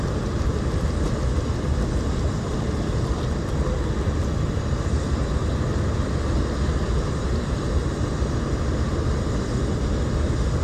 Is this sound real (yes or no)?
yes